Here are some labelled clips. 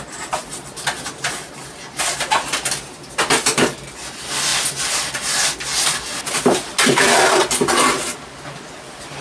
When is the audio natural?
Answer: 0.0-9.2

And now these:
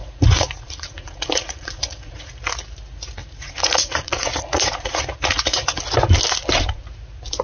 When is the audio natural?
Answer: 2.3-3.2; 5.8-7.4

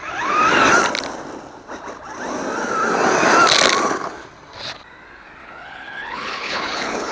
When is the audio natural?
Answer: 0.0-5.4

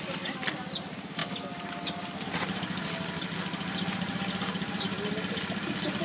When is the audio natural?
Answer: 0.0-6.0

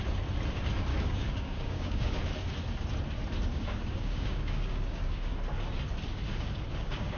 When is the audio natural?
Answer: 0.0-0.9; 2.2-3.5; 5.3-6.3